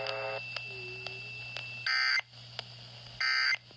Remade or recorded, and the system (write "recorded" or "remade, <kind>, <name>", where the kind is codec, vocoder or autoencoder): recorded